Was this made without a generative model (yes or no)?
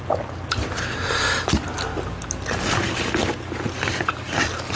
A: yes